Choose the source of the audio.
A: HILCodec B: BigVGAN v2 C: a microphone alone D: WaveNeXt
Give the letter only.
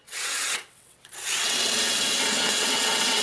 D